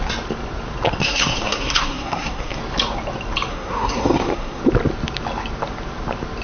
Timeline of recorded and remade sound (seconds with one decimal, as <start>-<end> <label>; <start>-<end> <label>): 0.0-1.0 recorded; 1.0-2.6 remade; 2.6-3.5 recorded; 3.5-4.6 remade; 4.6-6.4 recorded